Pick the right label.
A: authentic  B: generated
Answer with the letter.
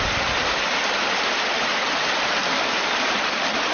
A